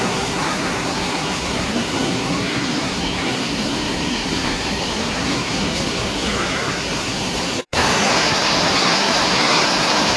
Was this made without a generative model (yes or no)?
no